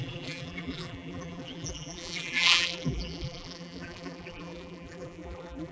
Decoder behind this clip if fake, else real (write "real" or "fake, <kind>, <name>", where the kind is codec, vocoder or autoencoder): fake, vocoder, BigVGAN v2